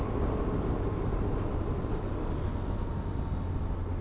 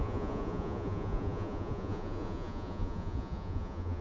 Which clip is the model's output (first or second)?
second